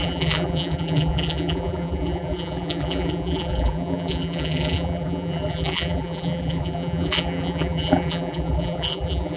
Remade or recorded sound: remade